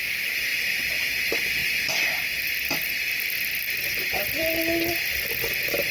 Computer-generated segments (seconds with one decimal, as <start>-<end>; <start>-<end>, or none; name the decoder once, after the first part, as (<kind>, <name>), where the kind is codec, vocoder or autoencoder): none